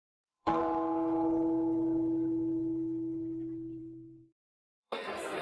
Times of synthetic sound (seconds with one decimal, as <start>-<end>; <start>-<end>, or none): 0.0-0.6; 3.8-5.4